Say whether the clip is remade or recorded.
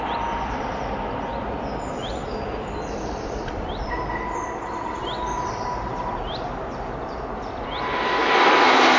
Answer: recorded